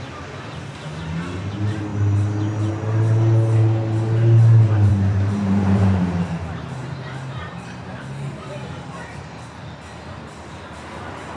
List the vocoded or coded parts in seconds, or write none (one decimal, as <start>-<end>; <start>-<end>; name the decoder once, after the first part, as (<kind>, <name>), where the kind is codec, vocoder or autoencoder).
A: 4.9-8.0 (vocoder, BigVGAN v2)